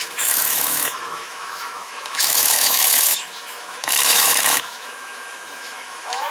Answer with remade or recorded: remade